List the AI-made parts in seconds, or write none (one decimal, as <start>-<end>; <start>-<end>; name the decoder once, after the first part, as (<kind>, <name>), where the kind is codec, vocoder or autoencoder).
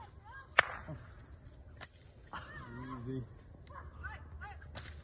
none